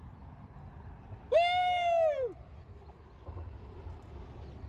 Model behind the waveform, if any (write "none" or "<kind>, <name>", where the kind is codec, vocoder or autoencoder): none